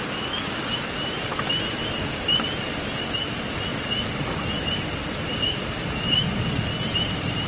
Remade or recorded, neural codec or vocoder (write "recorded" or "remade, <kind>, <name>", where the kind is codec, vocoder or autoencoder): recorded